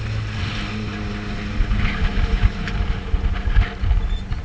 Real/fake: real